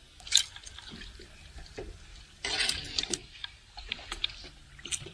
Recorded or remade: recorded